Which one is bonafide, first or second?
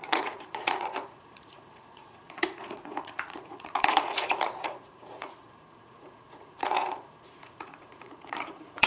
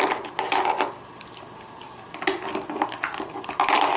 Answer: second